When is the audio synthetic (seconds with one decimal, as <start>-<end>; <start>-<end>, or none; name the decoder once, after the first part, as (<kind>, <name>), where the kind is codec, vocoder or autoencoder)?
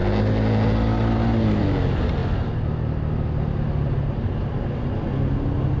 none